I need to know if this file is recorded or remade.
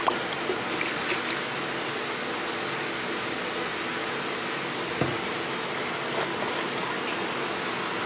recorded